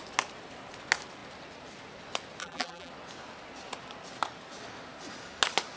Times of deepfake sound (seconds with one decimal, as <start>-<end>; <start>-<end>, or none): 2.4-2.9